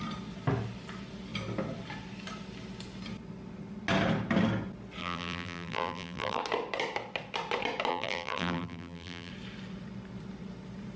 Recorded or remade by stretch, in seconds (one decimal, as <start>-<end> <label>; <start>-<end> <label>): 0.0-5.0 recorded; 5.0-6.4 remade; 6.4-7.9 recorded; 7.9-9.3 remade; 9.3-11.0 recorded